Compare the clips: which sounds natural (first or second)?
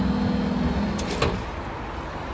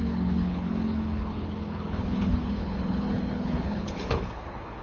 first